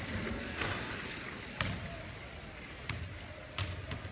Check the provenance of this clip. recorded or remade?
recorded